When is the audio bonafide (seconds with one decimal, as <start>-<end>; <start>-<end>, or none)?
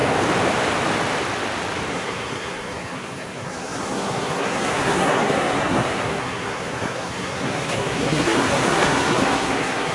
0.0-1.9